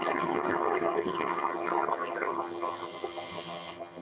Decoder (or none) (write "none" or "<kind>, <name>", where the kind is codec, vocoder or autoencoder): vocoder, HiFi-GAN